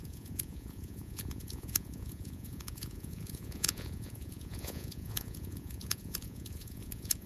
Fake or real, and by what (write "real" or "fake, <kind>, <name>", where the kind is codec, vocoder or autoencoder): fake, vocoder, Vocos